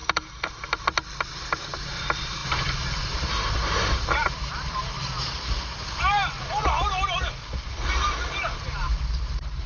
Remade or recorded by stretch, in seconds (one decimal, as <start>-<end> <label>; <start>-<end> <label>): 0.0-1.6 recorded; 1.6-9.7 remade